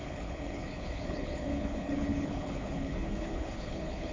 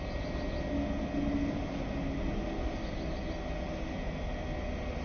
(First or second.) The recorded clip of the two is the second